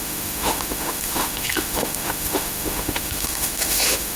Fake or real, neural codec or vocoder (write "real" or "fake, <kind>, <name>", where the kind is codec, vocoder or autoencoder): fake, autoencoder, DAC-VAE